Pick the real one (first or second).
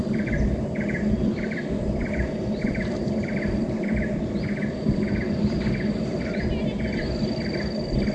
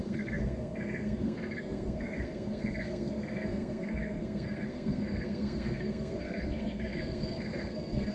first